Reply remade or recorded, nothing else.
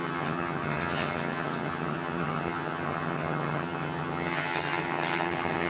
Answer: remade